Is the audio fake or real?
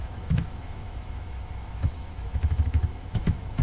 fake